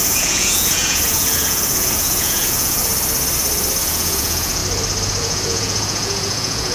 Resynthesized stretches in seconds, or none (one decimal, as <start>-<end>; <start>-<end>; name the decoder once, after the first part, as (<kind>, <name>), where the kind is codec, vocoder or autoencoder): 0.0-2.9 (vocoder, Vocos); 3.8-4.6; 5.2-6.7